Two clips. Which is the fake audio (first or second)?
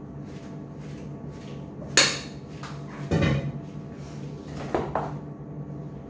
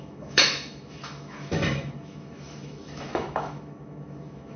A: second